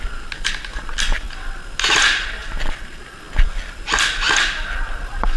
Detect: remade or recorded recorded